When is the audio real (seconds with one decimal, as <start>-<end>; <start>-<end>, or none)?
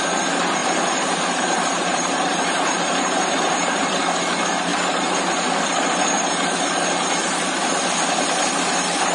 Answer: 0.0-0.6; 3.5-9.1